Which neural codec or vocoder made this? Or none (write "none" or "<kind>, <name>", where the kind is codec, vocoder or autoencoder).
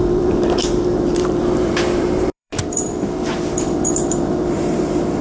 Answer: vocoder, BigVGAN v2